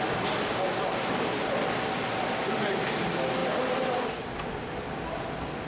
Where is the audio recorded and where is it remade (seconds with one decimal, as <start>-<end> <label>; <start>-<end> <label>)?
0.0-5.7 recorded

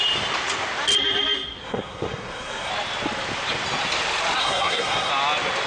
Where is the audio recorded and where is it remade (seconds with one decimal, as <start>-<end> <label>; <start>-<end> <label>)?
0.0-1.6 recorded; 1.6-2.7 remade; 2.7-4.4 recorded; 4.4-5.1 remade; 5.1-5.7 recorded

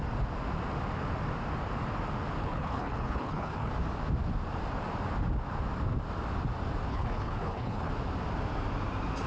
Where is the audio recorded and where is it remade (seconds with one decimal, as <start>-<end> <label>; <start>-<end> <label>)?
0.0-2.4 recorded; 2.4-3.7 remade; 3.7-6.9 recorded; 6.9-7.9 remade; 7.9-9.3 recorded

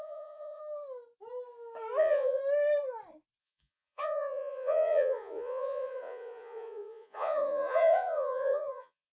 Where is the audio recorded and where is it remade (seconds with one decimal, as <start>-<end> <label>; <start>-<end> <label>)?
0.0-0.6 remade; 0.6-2.0 recorded; 2.0-2.4 remade; 2.4-3.4 recorded; 3.4-9.1 remade

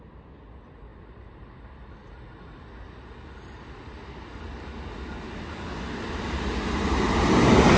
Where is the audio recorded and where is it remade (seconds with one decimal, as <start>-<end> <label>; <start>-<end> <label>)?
0.0-7.8 recorded

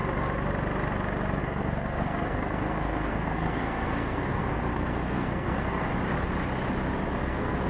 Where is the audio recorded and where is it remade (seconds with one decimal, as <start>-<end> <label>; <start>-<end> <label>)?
0.0-1.4 recorded; 1.4-5.9 remade; 5.9-7.2 recorded; 7.2-7.7 remade